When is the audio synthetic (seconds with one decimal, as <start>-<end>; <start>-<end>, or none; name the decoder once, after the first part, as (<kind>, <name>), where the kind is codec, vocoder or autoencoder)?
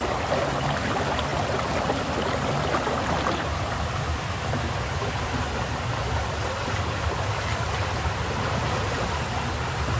none